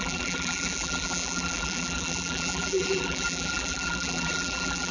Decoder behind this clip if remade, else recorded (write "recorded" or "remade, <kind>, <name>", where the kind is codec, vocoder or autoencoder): remade, vocoder, BigVGAN v2